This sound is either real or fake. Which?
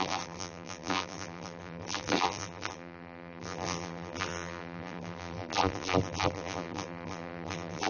fake